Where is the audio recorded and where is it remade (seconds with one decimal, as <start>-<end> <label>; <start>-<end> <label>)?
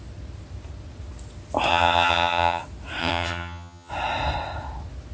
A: 0.0-1.7 recorded; 1.7-2.6 remade; 2.6-3.0 recorded; 3.0-3.9 remade; 3.9-5.1 recorded